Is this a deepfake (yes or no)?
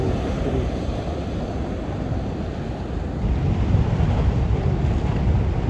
no